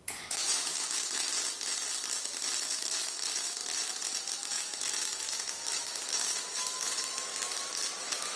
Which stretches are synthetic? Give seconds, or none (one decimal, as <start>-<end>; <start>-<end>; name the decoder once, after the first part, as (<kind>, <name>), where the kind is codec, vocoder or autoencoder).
0.0-1.3 (autoencoder, DAC-VAE); 2.6-3.6; 4.3-7.3; 8.0-8.4